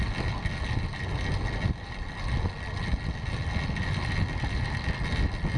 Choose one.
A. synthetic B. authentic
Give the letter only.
B